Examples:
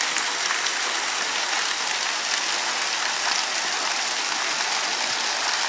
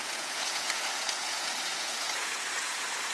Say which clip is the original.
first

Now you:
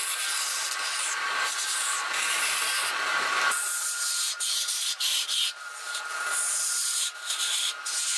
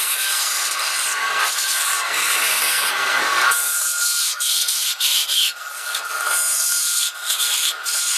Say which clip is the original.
first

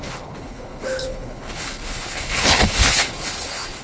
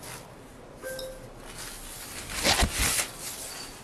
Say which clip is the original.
second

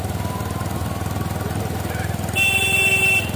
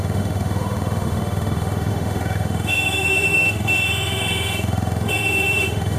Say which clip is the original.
first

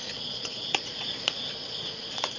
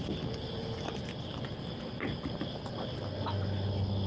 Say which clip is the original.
second